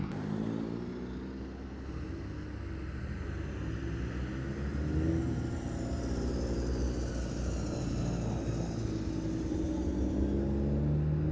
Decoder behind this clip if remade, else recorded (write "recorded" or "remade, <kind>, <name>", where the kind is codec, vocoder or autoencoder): recorded